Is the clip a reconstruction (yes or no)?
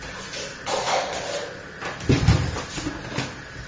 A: no